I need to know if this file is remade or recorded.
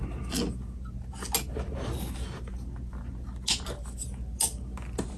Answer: recorded